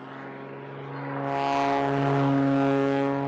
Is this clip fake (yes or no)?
no